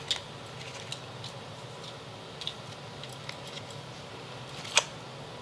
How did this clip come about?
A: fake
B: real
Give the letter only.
B